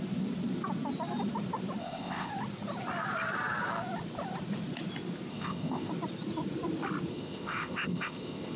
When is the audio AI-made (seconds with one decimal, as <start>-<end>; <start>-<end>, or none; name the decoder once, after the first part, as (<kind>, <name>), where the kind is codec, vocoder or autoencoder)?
1.8-2.3 (codec, ZipCodec); 5.3-5.9; 7.1-8.6